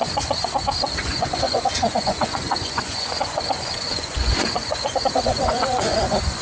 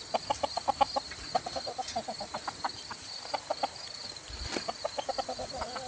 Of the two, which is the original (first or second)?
second